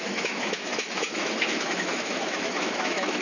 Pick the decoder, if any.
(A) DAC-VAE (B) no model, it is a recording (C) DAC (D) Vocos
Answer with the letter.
A